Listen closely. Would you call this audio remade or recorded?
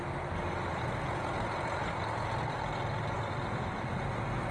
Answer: recorded